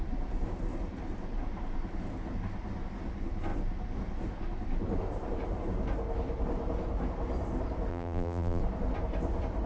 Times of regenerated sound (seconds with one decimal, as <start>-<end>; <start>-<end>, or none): 7.9-8.6